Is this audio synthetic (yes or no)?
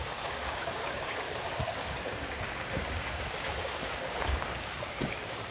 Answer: yes